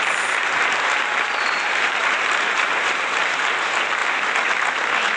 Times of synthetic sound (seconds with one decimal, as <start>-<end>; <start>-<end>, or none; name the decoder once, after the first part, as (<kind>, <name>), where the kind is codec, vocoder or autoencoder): 0.0-4.0 (vocoder, BigVGAN v2)